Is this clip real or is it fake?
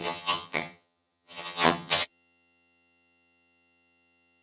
fake